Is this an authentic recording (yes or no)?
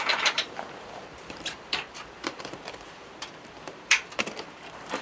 no